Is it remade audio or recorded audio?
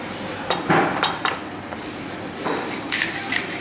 remade